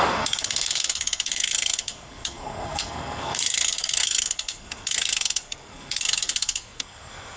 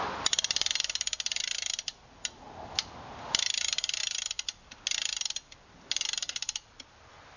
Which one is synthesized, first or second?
first